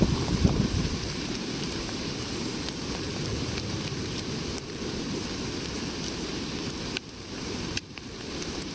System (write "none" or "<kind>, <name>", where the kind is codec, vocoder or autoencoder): vocoder, BigVGAN v2